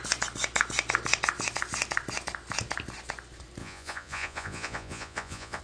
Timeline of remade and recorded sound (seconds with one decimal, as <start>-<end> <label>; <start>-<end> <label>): 0.0-3.6 recorded; 3.6-5.6 remade